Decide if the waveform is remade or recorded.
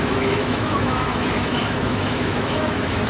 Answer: remade